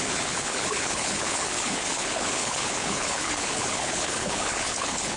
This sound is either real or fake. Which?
fake